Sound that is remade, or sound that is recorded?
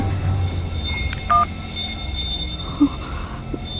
recorded